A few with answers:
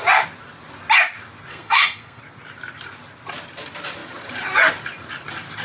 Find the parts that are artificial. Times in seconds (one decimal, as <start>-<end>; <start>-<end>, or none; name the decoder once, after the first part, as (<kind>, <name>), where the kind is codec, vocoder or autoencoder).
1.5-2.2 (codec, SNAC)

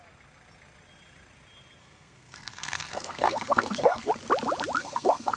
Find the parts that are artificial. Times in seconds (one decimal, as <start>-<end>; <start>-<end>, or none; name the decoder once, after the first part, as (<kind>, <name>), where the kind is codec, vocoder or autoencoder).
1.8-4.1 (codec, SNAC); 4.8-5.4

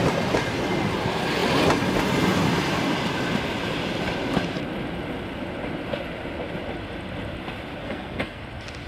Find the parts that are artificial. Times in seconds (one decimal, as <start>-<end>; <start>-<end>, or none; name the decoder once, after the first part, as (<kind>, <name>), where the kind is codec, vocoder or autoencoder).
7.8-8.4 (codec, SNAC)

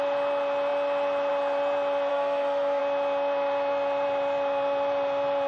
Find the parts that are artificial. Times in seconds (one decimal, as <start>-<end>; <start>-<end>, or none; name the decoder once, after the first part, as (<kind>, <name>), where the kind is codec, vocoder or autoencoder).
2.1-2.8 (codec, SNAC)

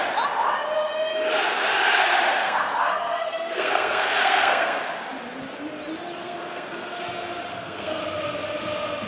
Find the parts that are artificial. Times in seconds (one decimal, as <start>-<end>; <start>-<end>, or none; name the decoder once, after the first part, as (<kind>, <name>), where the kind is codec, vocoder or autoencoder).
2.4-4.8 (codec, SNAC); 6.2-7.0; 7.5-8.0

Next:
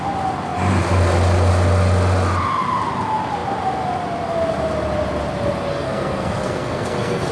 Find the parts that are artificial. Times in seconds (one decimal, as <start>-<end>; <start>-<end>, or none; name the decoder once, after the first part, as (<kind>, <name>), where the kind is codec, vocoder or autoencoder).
5.7-7.3 (codec, SNAC)

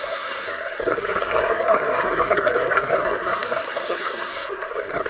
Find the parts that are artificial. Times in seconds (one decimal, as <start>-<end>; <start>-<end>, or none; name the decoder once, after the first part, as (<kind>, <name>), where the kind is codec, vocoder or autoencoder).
0.0-5.1 (codec, SNAC)

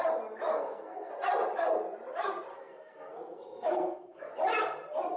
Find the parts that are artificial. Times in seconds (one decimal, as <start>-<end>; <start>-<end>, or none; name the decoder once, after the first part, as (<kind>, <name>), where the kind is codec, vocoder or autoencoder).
0.5-1.1 (codec, SNAC); 2.5-4.3